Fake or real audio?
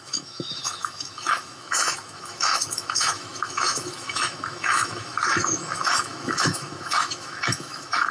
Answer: fake